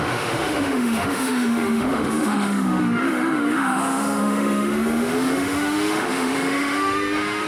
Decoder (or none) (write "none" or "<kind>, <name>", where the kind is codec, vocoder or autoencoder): autoencoder, DAC-VAE